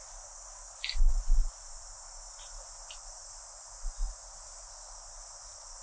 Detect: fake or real real